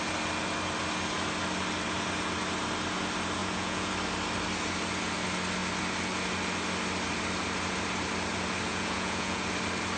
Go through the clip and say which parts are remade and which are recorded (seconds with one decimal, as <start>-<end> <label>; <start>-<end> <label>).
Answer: 0.0-3.4 recorded; 3.4-3.9 remade; 3.9-8.7 recorded; 8.7-9.4 remade; 9.4-10.0 recorded